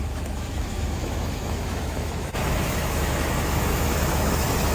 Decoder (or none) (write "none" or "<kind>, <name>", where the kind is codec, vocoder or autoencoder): autoencoder, DAC-VAE